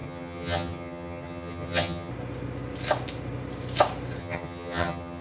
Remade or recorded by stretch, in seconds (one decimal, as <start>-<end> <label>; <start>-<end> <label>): 0.0-2.1 remade; 2.1-4.2 recorded; 4.2-5.2 remade